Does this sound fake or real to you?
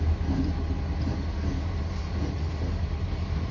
real